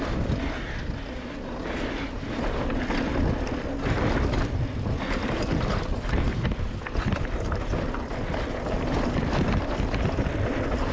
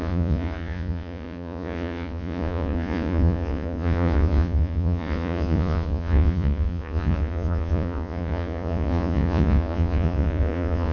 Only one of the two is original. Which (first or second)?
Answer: first